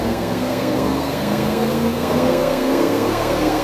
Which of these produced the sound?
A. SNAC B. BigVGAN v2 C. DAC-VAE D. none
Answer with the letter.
A